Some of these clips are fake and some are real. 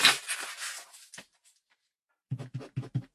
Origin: real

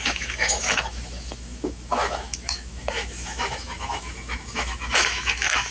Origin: fake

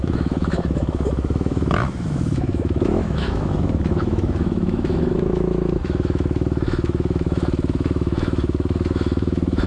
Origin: fake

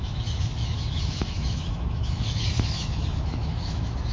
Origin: fake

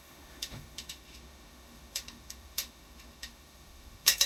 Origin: fake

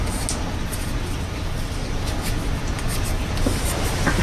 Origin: real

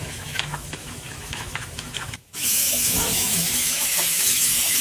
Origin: fake